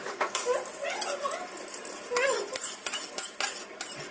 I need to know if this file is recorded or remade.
recorded